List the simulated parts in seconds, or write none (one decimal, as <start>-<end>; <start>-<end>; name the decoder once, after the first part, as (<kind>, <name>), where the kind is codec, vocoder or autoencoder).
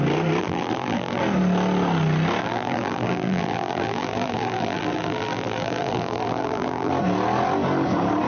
0.4-1.2 (vocoder, BigVGAN v2); 2.4-6.9